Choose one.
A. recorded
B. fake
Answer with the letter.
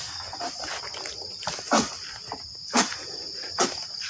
A